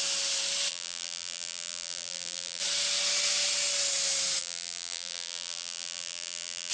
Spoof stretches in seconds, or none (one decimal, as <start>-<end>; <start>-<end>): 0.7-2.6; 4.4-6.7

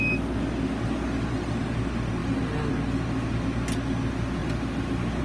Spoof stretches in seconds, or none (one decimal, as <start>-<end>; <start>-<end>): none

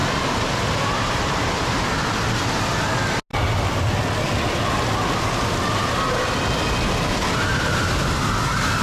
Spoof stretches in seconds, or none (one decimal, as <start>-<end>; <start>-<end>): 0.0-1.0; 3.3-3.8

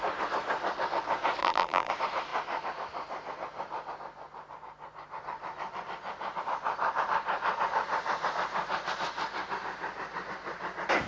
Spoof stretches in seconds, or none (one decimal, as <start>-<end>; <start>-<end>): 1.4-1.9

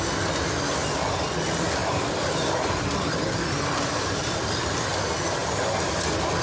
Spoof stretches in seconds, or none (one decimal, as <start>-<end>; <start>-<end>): 1.8-4.6; 5.4-5.9